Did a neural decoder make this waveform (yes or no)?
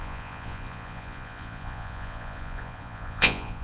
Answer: yes